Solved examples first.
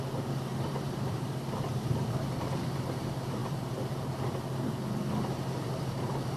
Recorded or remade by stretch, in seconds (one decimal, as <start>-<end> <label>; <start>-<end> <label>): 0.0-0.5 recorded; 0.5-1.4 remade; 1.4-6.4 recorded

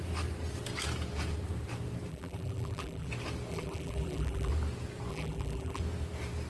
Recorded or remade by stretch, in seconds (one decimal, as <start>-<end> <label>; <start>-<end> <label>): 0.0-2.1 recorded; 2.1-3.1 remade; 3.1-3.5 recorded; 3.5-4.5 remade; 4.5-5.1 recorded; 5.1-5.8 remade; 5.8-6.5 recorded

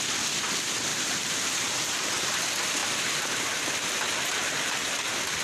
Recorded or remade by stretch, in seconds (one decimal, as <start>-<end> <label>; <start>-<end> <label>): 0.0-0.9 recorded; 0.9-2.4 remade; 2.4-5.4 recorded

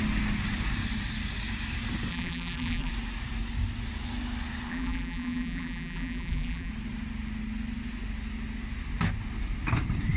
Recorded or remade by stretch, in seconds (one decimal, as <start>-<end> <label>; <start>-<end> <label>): 0.0-2.1 recorded; 2.1-2.9 remade; 2.9-4.7 recorded; 4.7-6.7 remade; 6.7-10.2 recorded

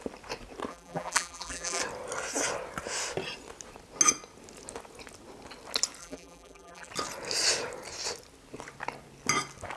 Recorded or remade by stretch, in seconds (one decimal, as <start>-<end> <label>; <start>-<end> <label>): 0.0-0.7 recorded; 0.7-1.8 remade; 1.8-6.0 recorded; 6.0-6.9 remade; 6.9-9.8 recorded

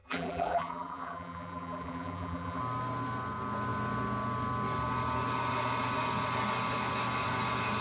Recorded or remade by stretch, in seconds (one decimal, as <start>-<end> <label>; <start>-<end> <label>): 0.0-2.6 remade; 2.6-7.8 recorded

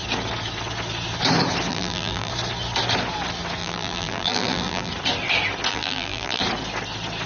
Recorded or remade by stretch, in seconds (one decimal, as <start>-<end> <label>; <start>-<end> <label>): 0.0-1.7 recorded; 1.7-2.3 remade; 2.3-3.6 recorded; 3.6-4.9 remade; 4.9-5.7 recorded; 5.7-6.4 remade; 6.4-7.3 recorded

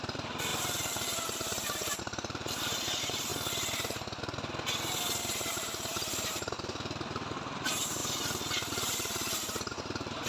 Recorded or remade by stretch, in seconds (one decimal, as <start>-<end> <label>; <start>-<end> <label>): 0.0-3.3 remade; 3.3-5.2 recorded; 5.2-10.3 remade